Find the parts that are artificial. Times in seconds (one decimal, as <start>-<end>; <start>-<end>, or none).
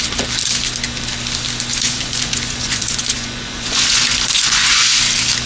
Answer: 1.7-5.0